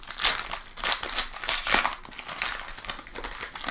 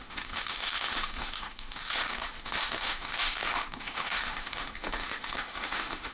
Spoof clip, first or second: second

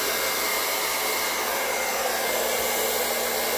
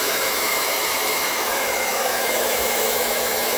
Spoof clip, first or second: second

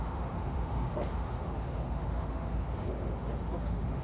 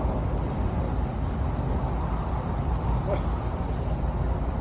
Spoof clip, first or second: first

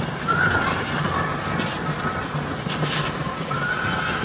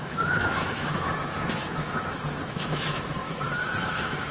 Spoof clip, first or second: second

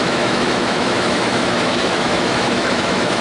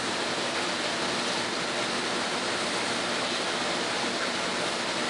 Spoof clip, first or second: first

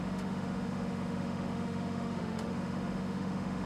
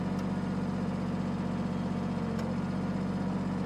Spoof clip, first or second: first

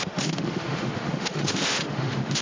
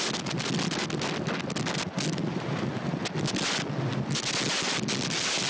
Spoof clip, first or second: first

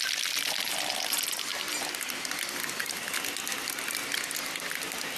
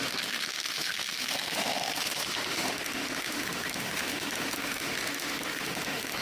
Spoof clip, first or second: second